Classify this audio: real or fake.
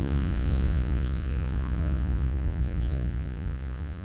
fake